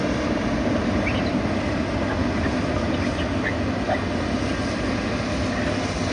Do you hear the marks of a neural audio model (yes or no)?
no